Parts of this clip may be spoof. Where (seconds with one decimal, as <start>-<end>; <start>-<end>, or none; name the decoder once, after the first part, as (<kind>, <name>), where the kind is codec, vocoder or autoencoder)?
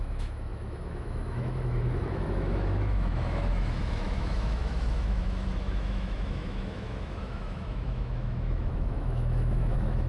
0.0-10.1 (autoencoder, DAC-VAE)